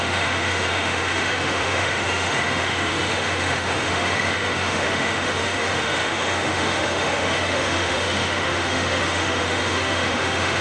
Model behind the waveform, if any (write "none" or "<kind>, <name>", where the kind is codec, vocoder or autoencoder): autoencoder, DAC-VAE